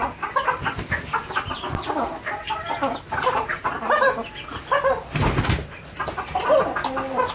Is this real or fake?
real